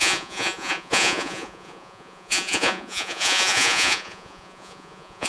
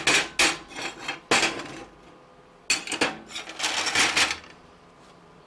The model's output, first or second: first